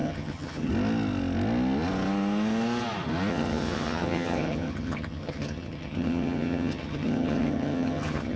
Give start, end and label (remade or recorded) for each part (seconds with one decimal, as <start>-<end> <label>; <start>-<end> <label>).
0.0-0.7 remade; 0.7-3.3 recorded; 3.3-8.4 remade